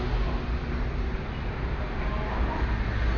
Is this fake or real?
real